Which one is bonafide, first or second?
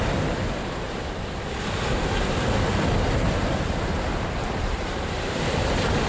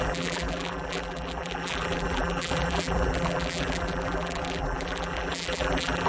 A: first